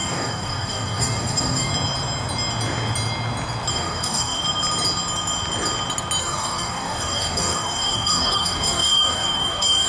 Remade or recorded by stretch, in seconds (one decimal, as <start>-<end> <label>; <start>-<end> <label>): 0.0-1.7 remade; 1.7-3.7 recorded; 3.7-4.4 remade; 4.4-6.2 recorded; 6.2-9.9 remade